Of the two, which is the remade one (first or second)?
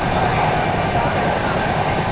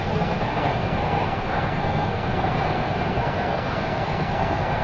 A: second